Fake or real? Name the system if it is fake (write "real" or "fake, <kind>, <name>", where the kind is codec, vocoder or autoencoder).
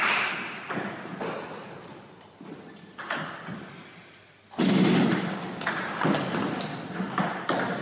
real